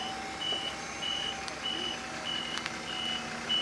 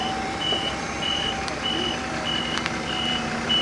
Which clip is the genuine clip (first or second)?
first